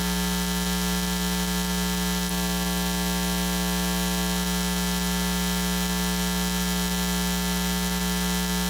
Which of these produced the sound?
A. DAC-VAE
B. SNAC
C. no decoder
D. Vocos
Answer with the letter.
C